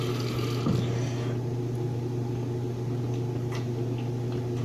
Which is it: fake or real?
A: real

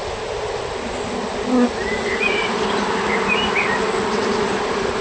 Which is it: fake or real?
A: real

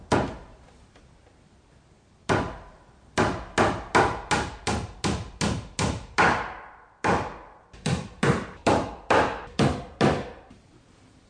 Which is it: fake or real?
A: real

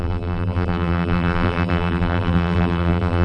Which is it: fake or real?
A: fake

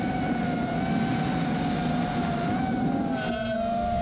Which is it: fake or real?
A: real